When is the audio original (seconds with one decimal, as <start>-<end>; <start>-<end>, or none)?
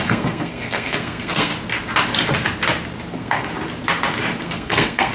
1.5-3.1; 3.5-4.4